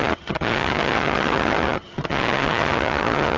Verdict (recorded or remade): remade